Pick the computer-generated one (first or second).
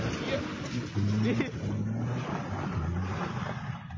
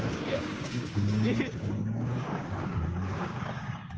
second